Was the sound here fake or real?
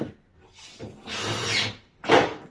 real